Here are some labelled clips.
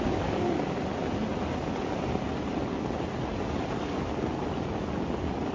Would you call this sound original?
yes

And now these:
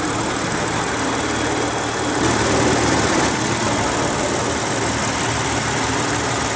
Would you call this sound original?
yes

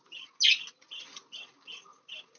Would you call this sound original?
yes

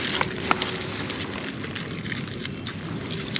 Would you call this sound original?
yes